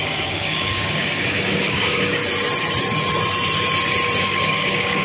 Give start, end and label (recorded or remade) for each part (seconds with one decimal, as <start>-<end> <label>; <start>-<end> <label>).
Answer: 0.0-2.2 remade; 2.2-4.2 recorded; 4.2-5.0 remade